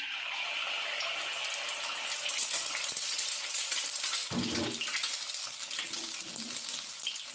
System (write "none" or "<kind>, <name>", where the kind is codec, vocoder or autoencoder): none